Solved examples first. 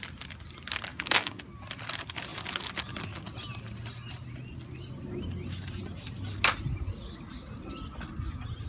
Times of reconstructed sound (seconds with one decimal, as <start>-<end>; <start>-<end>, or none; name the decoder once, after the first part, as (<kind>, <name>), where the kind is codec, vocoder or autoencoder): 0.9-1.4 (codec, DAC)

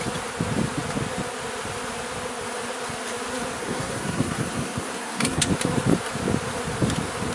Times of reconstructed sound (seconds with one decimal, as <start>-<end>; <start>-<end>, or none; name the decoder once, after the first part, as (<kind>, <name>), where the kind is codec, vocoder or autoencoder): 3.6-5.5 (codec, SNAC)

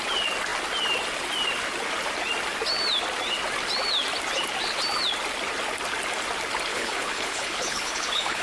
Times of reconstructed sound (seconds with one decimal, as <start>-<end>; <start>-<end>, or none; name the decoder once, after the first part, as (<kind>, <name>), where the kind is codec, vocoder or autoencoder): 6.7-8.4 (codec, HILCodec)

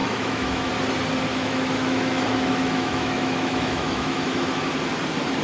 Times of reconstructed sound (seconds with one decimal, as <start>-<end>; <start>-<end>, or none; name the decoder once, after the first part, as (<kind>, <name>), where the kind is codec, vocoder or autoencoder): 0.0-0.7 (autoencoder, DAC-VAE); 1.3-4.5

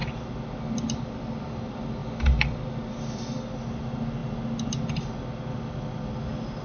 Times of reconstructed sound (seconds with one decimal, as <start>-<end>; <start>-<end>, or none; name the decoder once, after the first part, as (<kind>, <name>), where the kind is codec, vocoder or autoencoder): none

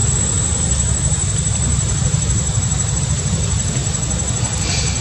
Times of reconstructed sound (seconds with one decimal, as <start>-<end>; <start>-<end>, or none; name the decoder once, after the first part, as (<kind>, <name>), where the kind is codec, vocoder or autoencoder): 3.0-3.8 (vocoder, BigVGAN v2)